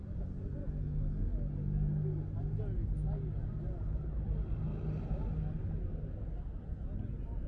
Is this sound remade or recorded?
recorded